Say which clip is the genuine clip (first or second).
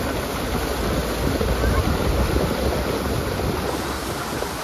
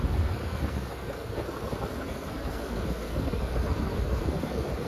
first